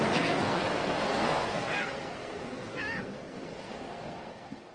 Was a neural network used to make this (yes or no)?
yes